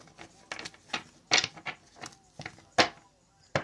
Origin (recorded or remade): recorded